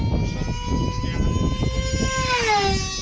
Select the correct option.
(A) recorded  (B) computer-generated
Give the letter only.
A